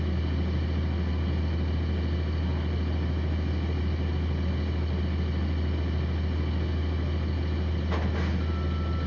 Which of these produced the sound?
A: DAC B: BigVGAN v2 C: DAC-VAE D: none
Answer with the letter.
D